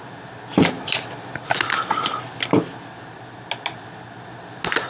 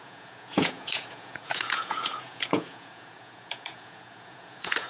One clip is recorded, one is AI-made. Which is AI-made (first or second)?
second